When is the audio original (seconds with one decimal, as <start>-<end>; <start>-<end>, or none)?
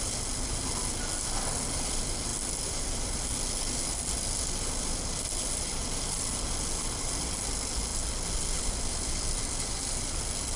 0.0-10.6